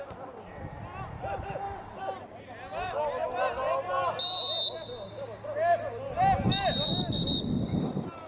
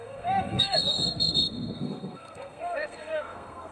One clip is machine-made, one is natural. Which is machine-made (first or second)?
second